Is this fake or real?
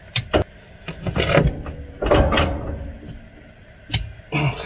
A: real